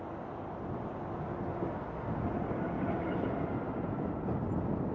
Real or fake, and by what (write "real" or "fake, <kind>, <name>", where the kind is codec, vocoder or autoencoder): real